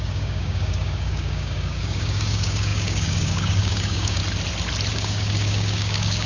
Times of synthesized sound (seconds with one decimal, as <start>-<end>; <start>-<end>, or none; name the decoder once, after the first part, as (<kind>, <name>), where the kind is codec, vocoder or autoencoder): 0.0-4.2 (codec, DAC); 4.9-6.3